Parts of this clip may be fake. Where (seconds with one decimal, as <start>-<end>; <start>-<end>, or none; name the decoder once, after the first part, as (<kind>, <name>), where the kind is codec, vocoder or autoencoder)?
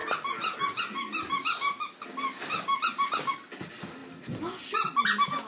none